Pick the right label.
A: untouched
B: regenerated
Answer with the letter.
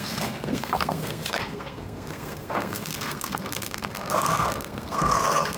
B